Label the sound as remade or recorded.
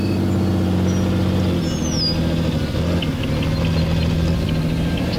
recorded